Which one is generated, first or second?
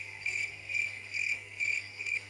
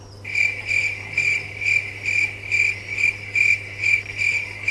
first